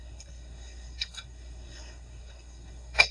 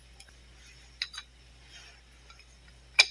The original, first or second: second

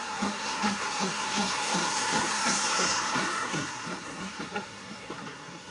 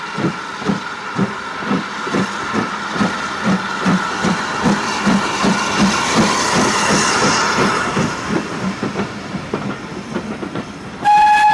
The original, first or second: second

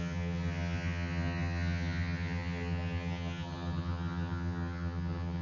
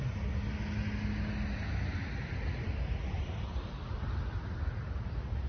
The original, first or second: second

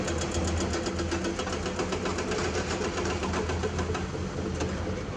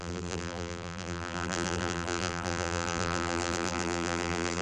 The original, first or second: first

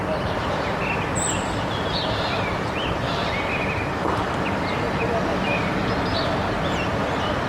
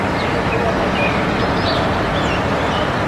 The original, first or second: first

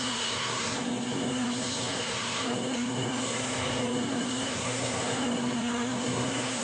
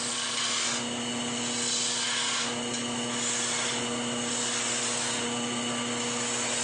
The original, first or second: second